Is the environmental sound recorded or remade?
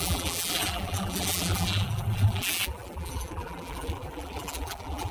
remade